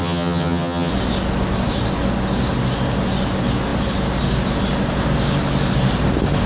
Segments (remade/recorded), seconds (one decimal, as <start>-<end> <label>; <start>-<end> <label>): 0.0-0.9 remade; 0.9-6.5 recorded